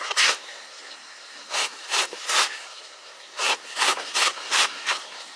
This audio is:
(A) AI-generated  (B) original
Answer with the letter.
A